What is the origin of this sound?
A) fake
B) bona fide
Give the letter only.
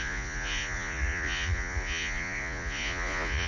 A